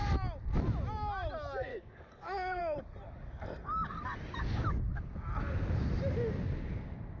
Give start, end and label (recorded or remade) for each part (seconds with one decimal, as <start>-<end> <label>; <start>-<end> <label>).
0.0-1.7 recorded; 1.7-2.6 remade; 2.6-7.2 recorded